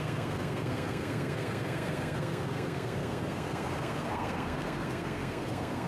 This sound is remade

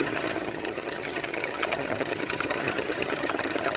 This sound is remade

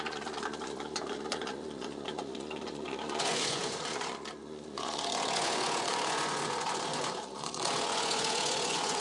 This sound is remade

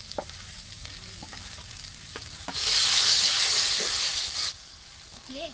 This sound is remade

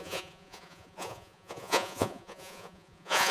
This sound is remade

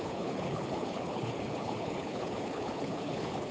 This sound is remade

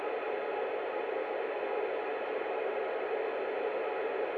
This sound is recorded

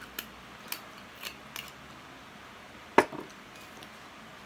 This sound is recorded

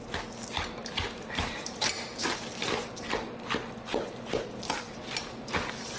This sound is recorded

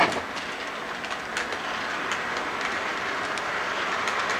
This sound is recorded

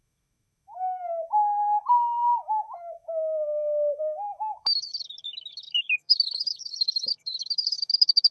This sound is remade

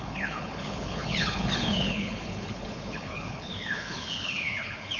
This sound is remade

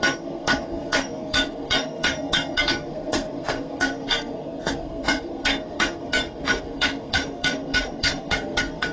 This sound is remade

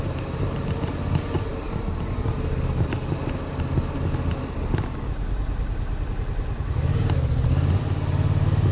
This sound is recorded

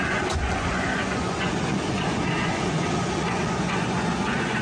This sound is remade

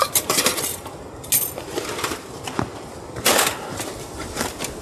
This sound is recorded